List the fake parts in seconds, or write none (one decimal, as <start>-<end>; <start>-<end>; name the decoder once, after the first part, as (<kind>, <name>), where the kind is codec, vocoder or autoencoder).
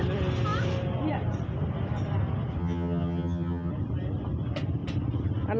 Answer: 2.6-3.7 (vocoder, HiFi-GAN)